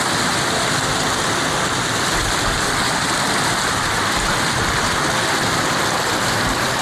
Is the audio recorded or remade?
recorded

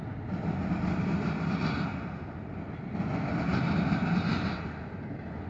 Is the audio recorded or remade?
recorded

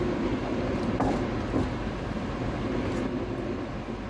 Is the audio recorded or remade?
recorded